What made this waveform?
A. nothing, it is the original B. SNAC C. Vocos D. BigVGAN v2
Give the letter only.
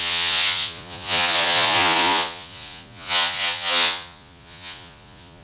C